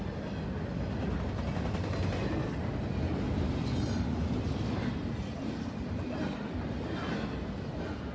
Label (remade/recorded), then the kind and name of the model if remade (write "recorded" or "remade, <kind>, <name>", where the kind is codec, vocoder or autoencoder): recorded